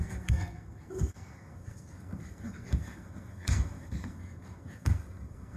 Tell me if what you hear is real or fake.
fake